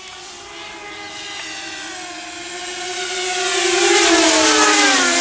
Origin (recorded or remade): recorded